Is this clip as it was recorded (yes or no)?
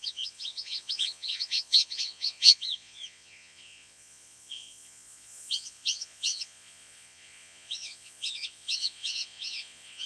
no